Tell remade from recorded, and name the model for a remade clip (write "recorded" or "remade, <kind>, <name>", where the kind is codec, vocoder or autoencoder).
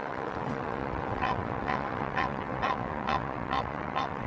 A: remade, vocoder, WaveNeXt